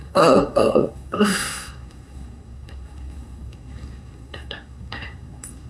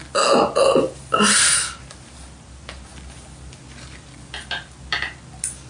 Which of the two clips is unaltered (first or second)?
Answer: second